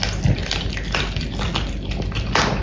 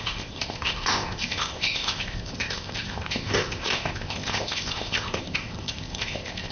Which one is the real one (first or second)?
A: first